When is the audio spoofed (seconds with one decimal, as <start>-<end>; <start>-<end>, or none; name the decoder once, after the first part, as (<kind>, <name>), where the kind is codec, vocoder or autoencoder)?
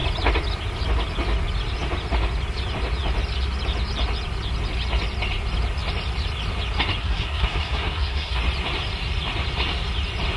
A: 7.0-8.4 (codec, SNAC)